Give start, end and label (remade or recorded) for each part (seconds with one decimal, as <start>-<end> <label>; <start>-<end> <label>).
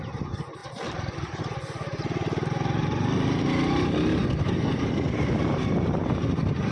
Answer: 0.0-0.6 recorded; 0.6-1.4 remade; 1.4-6.7 recorded